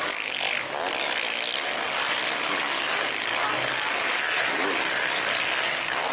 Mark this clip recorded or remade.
recorded